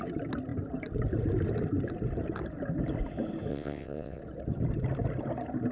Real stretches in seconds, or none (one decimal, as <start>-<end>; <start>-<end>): 0.0-3.5; 4.2-5.7